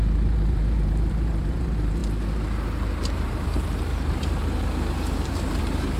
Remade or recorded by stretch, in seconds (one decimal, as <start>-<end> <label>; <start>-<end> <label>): 0.0-6.0 remade

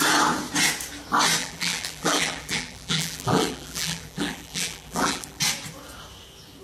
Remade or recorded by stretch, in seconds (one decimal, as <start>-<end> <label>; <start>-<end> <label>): 0.0-1.4 recorded; 1.4-5.4 remade; 5.4-6.6 recorded